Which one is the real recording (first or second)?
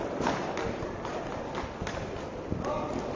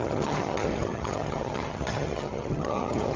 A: first